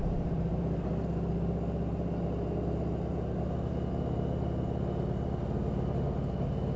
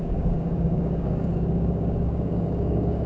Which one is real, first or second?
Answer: first